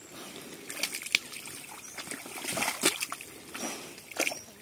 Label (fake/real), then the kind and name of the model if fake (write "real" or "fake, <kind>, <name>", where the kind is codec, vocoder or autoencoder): real